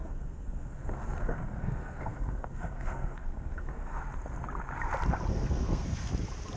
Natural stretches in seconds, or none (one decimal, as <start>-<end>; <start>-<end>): 4.0-5.3; 6.1-6.6